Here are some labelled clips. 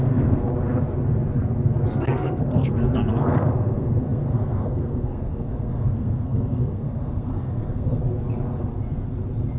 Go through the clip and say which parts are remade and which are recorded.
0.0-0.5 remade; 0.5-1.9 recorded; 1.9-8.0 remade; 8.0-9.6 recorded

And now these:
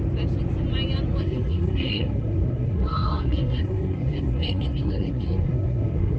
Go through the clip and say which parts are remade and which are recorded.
0.0-1.2 recorded; 1.2-6.2 remade

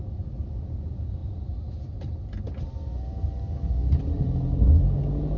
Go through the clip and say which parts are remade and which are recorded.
0.0-5.4 recorded

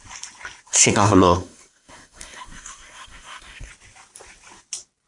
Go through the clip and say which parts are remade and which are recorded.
0.0-0.7 recorded; 0.7-3.7 remade; 3.7-5.1 recorded

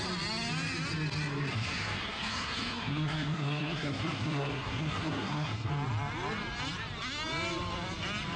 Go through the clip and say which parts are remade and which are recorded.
0.0-1.5 recorded; 1.5-5.7 remade; 5.7-8.4 recorded

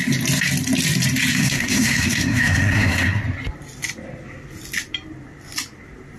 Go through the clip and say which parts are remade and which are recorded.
0.0-1.3 recorded; 1.3-3.2 remade; 3.2-6.2 recorded

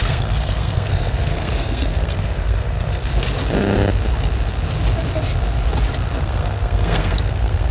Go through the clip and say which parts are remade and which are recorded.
0.0-3.1 remade; 3.1-6.2 recorded; 6.2-7.7 remade

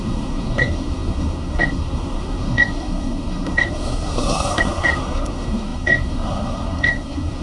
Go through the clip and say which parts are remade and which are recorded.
0.0-7.4 remade